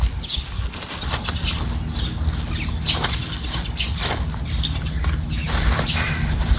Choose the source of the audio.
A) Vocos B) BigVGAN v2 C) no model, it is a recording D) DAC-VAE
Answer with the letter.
C